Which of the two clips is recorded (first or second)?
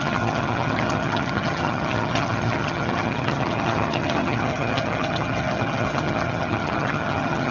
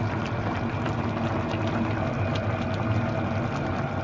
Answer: second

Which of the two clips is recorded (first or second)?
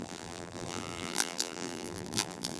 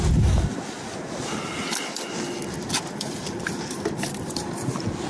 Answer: second